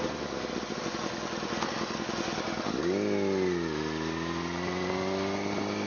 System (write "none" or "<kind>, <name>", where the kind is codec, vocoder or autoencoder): none